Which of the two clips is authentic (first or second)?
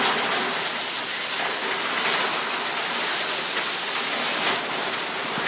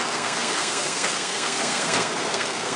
first